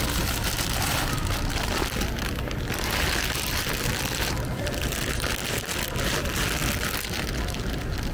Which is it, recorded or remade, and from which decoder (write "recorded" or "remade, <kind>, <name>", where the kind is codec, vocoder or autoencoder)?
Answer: recorded